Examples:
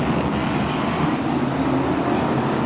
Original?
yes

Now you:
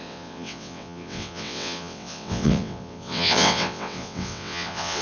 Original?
no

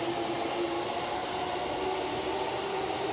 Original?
yes